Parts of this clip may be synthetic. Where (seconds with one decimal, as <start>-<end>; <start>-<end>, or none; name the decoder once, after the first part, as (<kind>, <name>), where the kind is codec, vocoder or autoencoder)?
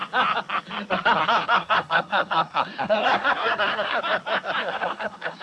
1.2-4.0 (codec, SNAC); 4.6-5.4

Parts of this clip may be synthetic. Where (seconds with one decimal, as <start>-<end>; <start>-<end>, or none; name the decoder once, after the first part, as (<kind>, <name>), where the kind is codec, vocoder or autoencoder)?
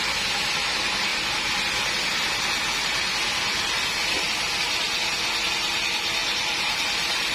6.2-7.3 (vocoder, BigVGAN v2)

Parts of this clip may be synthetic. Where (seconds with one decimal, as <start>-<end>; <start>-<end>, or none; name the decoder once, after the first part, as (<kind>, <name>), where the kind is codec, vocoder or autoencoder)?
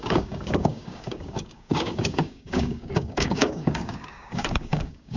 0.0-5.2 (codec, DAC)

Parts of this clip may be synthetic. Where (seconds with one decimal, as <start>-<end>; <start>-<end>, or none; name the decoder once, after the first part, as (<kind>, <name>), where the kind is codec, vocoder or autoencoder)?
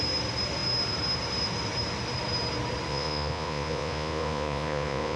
2.9-5.2 (vocoder, Vocos)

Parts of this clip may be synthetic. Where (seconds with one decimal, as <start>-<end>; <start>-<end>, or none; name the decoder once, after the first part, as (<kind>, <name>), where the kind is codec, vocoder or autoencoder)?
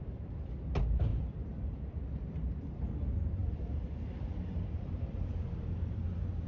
1.1-2.8 (vocoder, BigVGAN v2); 3.4-6.5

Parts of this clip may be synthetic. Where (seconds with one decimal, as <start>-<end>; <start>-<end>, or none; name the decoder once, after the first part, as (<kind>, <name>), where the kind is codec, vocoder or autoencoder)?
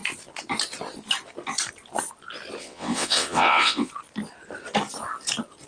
2.6-3.9 (vocoder, WaveNeXt)